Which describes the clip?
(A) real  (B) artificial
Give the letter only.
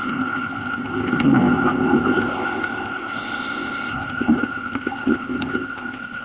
B